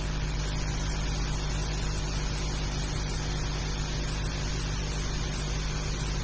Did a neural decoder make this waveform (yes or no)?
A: no